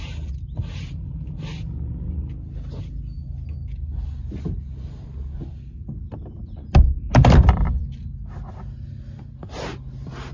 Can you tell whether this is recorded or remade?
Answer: recorded